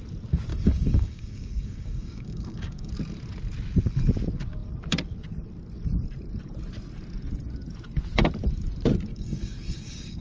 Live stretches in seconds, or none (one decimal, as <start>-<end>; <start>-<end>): 0.0-0.5; 2.9-9.1